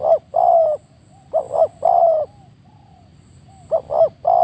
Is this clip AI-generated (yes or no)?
no